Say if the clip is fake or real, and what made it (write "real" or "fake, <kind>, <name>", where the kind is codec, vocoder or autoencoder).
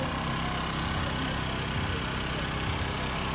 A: real